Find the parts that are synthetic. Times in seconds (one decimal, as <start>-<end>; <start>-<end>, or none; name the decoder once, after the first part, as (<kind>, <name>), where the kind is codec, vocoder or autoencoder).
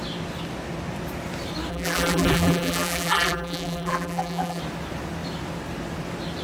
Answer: 1.7-4.6 (vocoder, BigVGAN v2)